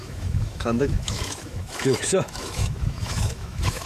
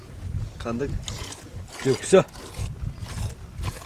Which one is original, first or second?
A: second